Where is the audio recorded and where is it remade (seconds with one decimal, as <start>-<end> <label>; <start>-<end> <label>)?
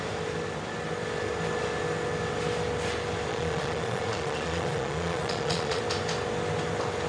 0.0-3.3 recorded; 3.3-5.8 remade; 5.8-7.1 recorded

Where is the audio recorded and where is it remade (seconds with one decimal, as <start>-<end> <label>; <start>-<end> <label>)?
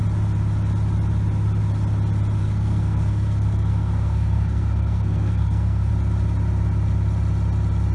0.0-2.4 recorded; 2.4-5.9 remade; 5.9-7.9 recorded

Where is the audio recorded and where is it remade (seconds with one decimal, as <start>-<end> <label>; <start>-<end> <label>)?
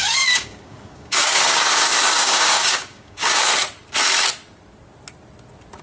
0.0-3.5 remade; 3.5-5.8 recorded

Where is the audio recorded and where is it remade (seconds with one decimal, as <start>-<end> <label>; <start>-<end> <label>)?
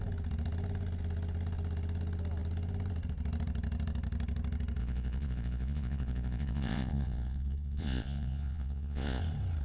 0.0-4.8 recorded; 4.8-9.2 remade; 9.2-9.6 recorded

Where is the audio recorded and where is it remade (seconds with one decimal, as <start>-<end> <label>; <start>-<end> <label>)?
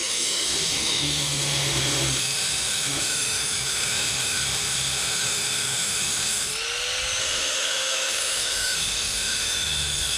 0.0-6.5 remade; 6.5-7.2 recorded; 7.2-10.2 remade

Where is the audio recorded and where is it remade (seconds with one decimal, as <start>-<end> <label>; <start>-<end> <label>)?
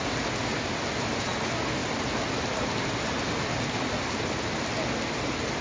0.0-5.6 recorded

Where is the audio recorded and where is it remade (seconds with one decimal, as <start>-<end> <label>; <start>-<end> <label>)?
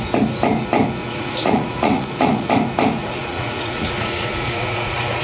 0.0-1.0 recorded; 1.0-2.5 remade; 2.5-3.0 recorded; 3.0-5.2 remade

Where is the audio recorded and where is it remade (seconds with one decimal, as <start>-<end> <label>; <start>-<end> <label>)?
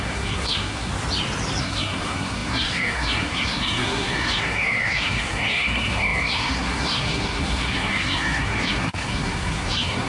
0.0-0.9 remade; 0.9-1.6 recorded; 1.6-10.1 remade